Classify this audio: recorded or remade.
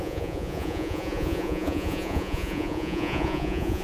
remade